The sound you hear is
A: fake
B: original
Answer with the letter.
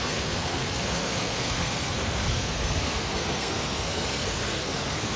A